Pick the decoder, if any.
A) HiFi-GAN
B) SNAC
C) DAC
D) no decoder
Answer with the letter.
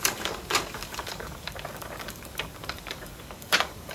C